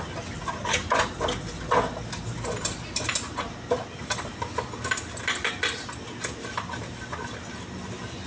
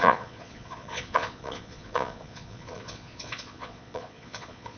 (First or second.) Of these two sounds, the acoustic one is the first